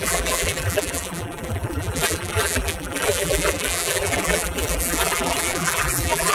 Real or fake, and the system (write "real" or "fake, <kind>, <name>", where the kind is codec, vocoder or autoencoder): fake, vocoder, BigVGAN v2